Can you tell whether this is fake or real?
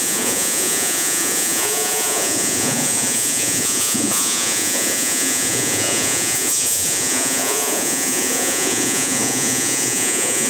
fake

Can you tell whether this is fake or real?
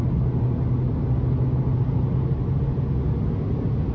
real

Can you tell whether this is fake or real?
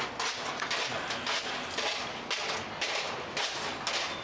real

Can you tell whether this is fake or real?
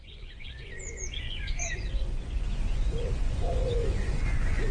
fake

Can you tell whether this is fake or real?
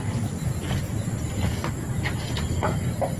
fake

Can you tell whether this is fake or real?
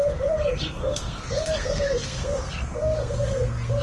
fake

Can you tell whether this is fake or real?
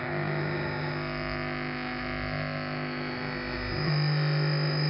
fake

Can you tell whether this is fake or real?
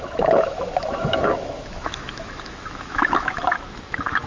fake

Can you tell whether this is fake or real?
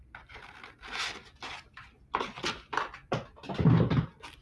real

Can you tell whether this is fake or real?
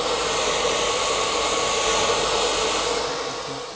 real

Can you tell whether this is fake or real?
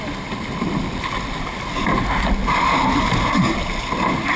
real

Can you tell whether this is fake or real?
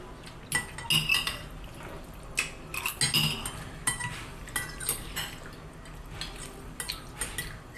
real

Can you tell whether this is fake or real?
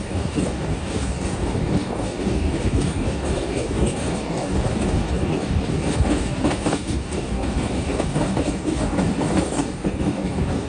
fake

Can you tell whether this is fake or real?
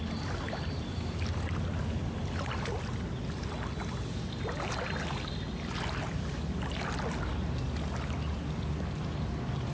real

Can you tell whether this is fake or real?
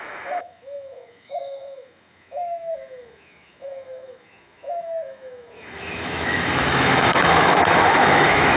fake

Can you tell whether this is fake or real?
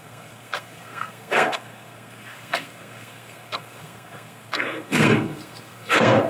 fake